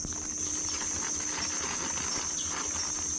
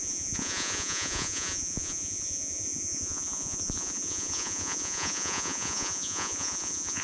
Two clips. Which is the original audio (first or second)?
first